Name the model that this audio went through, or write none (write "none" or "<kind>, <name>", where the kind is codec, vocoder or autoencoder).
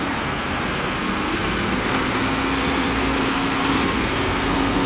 codec, SNAC